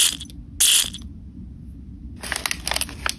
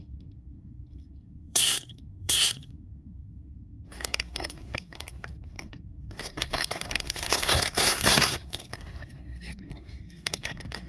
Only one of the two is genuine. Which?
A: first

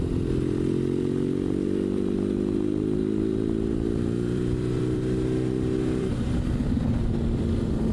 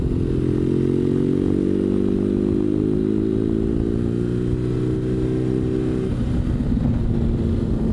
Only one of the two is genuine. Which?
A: second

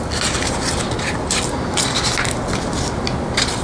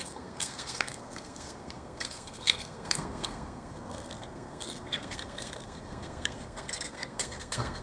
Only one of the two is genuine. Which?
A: first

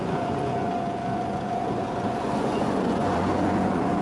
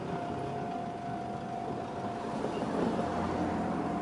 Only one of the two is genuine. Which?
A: second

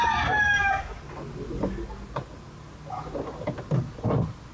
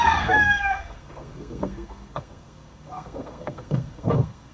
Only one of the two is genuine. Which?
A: first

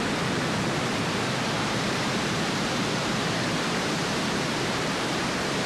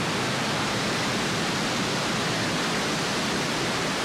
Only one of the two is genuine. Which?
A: second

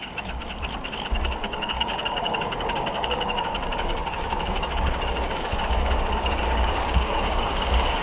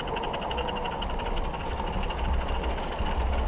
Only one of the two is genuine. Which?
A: second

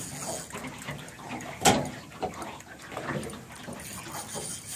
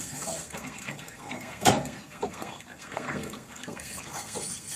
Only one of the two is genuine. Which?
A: first